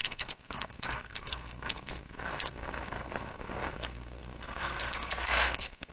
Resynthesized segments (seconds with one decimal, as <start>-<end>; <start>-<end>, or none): 0.0-5.9